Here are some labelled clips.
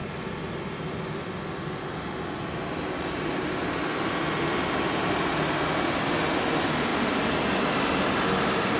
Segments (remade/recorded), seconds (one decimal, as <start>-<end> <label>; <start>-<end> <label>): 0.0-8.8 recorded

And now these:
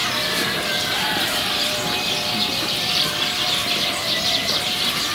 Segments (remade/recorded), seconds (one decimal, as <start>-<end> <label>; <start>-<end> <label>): 0.0-5.1 remade

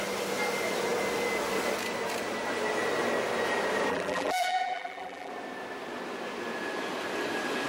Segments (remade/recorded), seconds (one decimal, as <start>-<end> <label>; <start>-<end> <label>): 0.0-3.9 recorded; 3.9-5.3 remade; 5.3-7.7 recorded